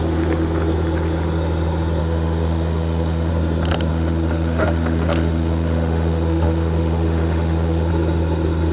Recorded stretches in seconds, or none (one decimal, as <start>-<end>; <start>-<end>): 0.0-2.0; 3.3-3.9; 7.9-8.7